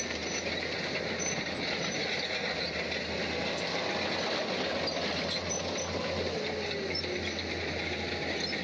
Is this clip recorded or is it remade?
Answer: recorded